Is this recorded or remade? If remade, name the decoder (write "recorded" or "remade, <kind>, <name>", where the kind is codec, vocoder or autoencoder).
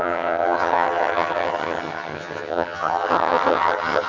remade, vocoder, HiFi-GAN